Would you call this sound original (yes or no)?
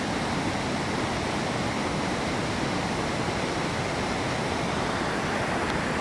yes